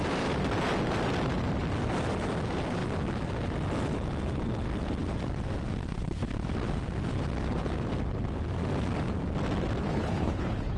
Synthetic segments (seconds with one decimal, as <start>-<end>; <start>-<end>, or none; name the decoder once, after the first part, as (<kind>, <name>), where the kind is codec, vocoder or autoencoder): 9.8-10.8 (codec, HILCodec)